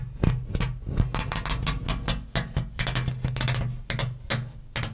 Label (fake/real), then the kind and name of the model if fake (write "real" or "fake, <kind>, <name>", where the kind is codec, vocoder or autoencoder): real